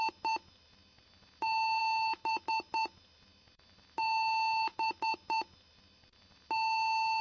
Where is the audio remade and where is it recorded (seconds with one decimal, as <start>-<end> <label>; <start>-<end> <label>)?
0.0-7.2 recorded